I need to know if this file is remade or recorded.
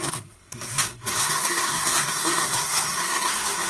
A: remade